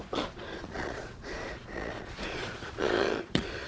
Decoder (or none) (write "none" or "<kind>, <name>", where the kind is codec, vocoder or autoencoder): vocoder, Vocos